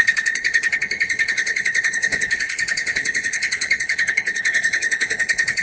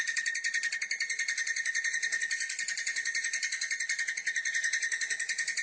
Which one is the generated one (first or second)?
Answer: first